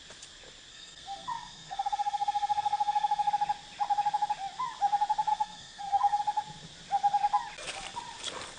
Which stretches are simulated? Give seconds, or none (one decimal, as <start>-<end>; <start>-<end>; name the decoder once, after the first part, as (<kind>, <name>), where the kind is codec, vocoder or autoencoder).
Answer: 0.7-3.3 (codec, SNAC); 5.3-6.2